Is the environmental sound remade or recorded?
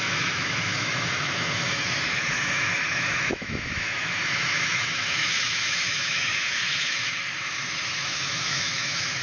remade